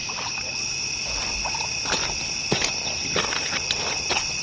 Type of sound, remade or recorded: recorded